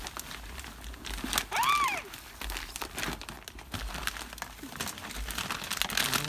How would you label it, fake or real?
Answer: real